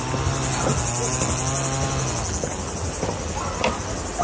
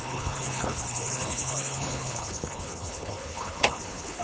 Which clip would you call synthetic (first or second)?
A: second